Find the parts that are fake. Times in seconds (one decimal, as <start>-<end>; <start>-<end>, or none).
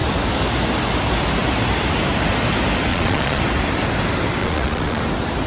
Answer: 2.9-3.4; 4.4-5.0